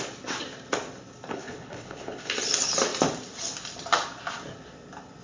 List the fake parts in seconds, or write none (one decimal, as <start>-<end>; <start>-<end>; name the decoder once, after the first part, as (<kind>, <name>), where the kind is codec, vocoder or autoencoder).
1.3-2.3 (codec, HILCodec)